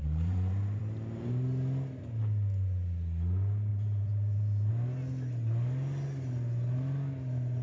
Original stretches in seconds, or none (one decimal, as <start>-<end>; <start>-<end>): 0.8-3.7; 4.7-7.6